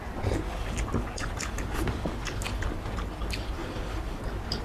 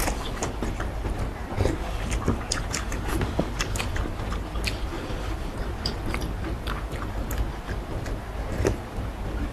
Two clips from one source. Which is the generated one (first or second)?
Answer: second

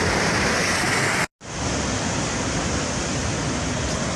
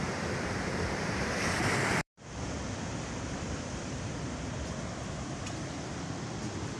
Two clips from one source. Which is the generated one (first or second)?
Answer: second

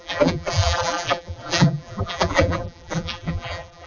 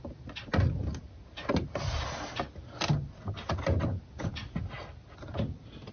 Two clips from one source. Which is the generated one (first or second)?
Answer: first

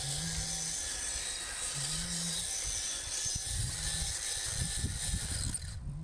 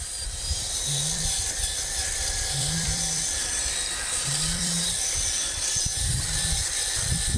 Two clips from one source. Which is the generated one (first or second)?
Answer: second